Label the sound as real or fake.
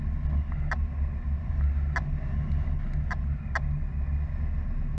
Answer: real